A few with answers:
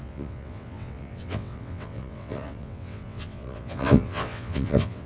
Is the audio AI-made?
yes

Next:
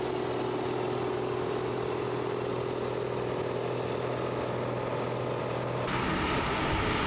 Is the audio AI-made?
no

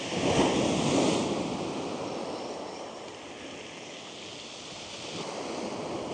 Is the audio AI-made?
no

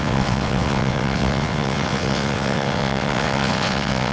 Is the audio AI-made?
yes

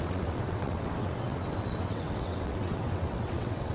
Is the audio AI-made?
yes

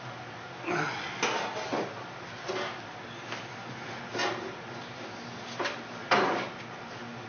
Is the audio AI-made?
no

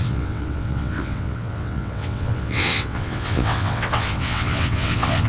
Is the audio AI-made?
yes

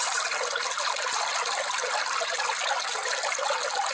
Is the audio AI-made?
no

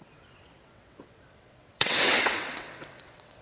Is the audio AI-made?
yes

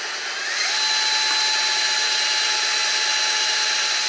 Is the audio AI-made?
no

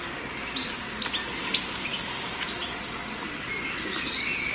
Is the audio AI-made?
no